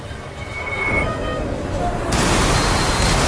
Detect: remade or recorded recorded